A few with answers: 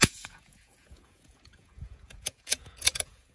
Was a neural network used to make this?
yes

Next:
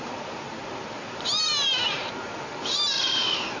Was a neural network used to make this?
yes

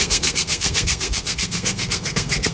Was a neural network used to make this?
yes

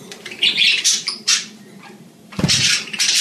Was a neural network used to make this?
yes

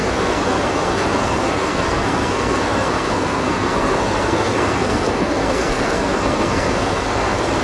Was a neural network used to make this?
yes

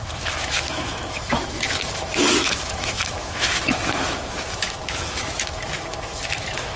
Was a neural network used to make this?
yes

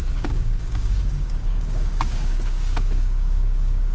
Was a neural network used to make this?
yes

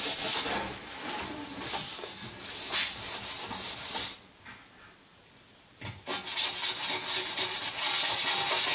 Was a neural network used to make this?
no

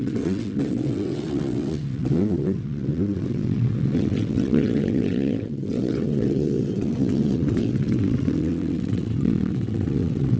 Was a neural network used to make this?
yes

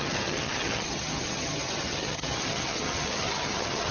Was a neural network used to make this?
yes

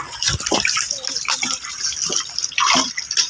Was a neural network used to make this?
no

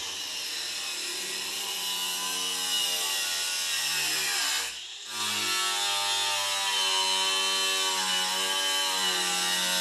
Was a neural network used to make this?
no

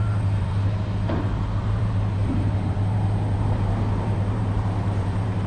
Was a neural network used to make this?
yes